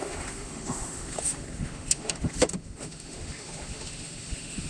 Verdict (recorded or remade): remade